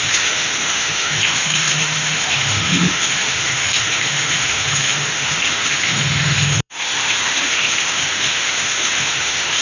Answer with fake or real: fake